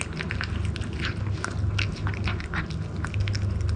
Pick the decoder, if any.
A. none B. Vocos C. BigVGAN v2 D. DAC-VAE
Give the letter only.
A